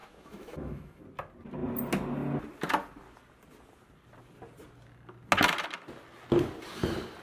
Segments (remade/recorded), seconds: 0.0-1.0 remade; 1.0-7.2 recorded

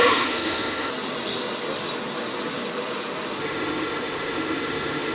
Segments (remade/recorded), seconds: 0.0-0.9 remade; 0.9-3.4 recorded; 3.4-5.1 remade

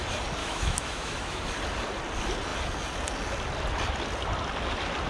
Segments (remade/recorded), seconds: 0.0-0.4 recorded; 0.4-1.4 remade; 1.4-5.1 recorded